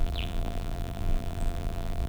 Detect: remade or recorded remade